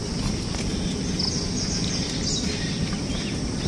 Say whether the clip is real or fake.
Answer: real